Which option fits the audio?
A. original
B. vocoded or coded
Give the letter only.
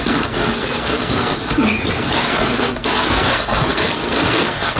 B